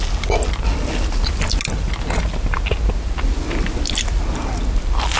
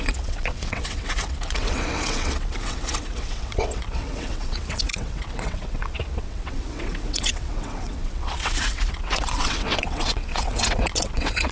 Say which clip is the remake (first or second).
second